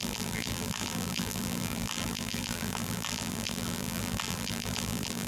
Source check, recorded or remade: remade